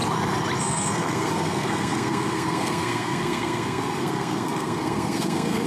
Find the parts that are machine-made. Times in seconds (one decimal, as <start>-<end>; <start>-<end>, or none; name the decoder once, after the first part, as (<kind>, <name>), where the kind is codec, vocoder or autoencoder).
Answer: 0.6-5.7 (codec, SNAC)